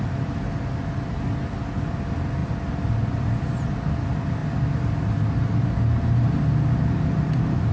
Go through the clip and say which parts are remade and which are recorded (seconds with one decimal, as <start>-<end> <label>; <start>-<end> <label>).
0.0-7.7 recorded